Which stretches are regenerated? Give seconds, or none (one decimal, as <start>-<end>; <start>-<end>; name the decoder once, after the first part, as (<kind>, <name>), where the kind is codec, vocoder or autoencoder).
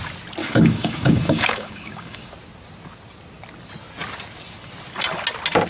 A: 0.4-2.3 (codec, DAC)